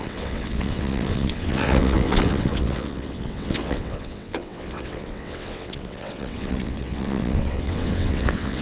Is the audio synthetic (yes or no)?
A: yes